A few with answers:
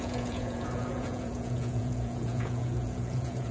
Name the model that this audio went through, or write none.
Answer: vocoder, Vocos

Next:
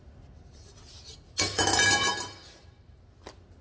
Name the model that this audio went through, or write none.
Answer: none